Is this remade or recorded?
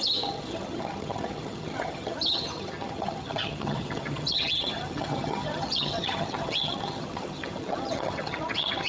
remade